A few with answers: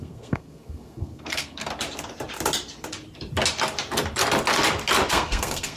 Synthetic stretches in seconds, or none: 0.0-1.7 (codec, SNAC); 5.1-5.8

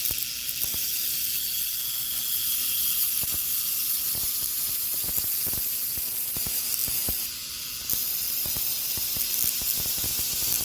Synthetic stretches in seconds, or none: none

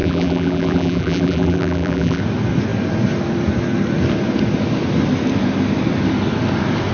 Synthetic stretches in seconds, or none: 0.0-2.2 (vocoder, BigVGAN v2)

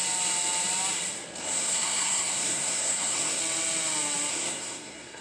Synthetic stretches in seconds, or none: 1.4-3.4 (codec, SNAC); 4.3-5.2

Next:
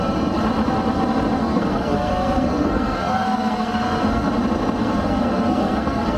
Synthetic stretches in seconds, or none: 1.4-4.3 (codec, SNAC); 4.8-6.2